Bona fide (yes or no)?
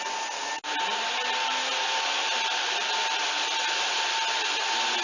yes